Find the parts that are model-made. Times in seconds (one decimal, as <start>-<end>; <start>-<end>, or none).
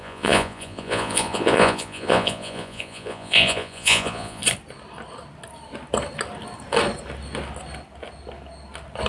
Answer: 0.0-4.4